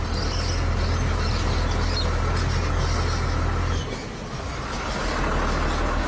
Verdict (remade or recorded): recorded